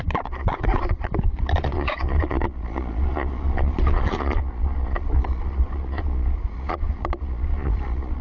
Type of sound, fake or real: fake